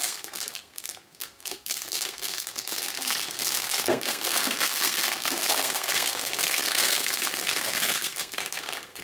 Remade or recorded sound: remade